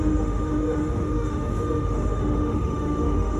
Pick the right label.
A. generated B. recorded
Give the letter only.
A